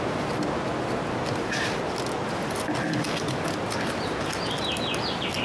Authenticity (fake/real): real